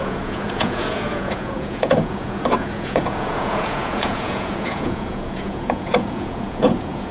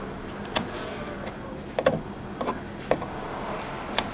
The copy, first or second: first